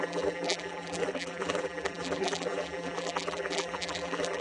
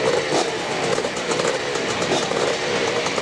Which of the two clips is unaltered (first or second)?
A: second